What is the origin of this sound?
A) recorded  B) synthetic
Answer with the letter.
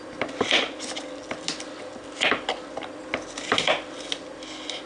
A